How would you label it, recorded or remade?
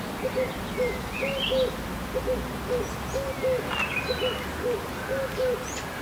recorded